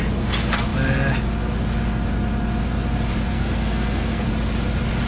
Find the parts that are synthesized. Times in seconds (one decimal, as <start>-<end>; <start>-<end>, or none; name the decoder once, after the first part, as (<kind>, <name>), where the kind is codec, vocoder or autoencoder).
3.3-4.3 (codec, SNAC)